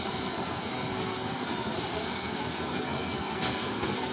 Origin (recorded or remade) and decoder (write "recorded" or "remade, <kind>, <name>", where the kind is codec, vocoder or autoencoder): remade, codec, SNAC